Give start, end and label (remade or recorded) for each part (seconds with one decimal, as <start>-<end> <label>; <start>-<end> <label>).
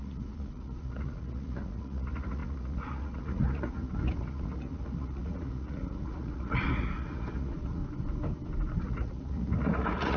0.0-7.8 remade; 7.8-8.8 recorded; 8.8-10.2 remade